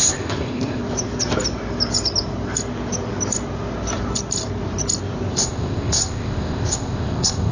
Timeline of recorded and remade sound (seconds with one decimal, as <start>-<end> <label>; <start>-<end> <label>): 0.0-0.8 remade; 0.8-5.3 recorded; 5.3-7.5 remade